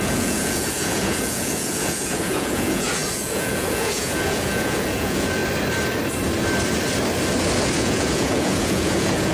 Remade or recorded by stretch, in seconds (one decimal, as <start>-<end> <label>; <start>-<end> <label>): 0.0-5.4 remade; 5.4-7.8 recorded; 7.8-9.3 remade